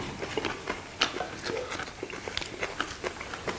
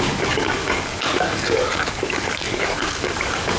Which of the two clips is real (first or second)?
first